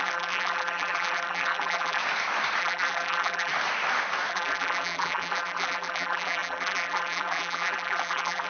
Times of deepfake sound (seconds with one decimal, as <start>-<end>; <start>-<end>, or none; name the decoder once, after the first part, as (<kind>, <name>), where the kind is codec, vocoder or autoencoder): 0.0-2.0 (vocoder, BigVGAN v2); 2.6-3.5; 4.3-8.5